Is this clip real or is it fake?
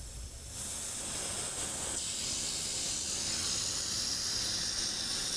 fake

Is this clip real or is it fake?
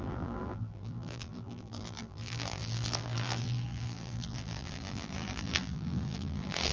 fake